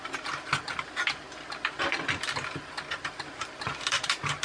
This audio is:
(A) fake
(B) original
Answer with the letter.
B